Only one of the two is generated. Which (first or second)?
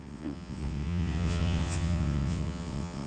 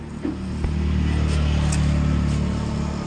first